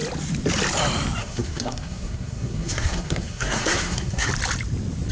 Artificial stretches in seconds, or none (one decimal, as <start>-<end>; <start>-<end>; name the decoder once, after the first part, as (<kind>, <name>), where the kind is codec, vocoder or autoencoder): 1.2-4.3 (codec, SNAC)